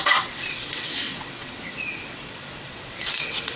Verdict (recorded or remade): remade